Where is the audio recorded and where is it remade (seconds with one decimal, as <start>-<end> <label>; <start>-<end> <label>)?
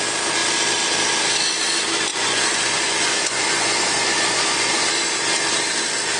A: 0.0-2.1 recorded; 2.1-4.8 remade; 4.8-6.2 recorded